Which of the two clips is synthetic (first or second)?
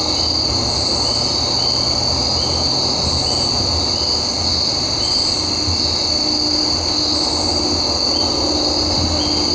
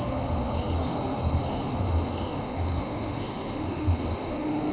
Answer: second